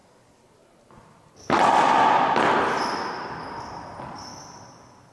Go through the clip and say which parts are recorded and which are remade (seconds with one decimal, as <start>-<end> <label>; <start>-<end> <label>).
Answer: 0.0-5.1 recorded